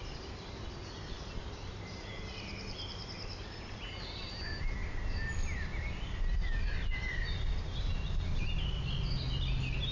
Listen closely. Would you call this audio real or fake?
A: real